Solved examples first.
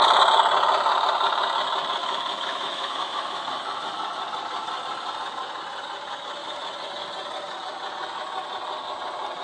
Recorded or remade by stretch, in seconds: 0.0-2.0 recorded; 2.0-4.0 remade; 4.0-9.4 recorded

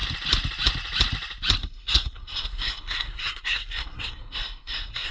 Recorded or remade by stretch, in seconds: 0.0-1.6 recorded; 1.6-5.1 remade

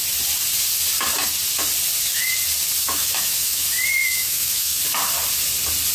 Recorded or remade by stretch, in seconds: 0.0-2.8 recorded; 2.8-3.6 remade; 3.6-4.0 recorded; 4.0-4.8 remade; 4.8-5.9 recorded

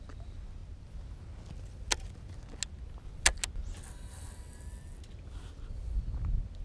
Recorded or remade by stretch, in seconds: 0.0-6.6 recorded